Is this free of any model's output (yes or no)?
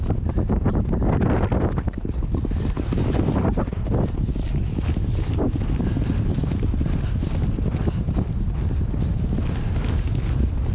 yes